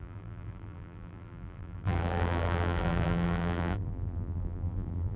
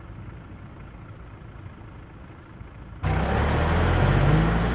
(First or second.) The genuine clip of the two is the second